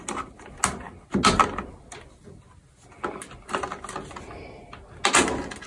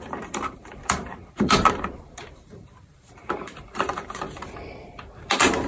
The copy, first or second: second